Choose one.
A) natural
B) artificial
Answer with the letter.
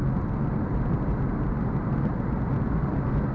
A